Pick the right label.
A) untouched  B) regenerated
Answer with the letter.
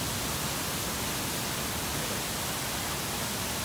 A